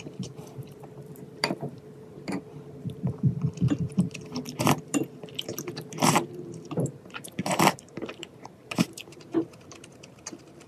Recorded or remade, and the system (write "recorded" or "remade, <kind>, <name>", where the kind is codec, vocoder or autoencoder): remade, vocoder, BigVGAN v2